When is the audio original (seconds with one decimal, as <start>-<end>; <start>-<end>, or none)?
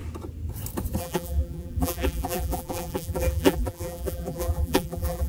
0.0-1.0